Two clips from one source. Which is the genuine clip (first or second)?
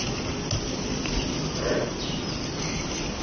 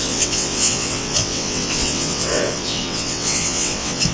first